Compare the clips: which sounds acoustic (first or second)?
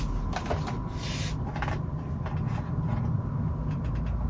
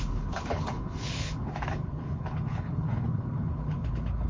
first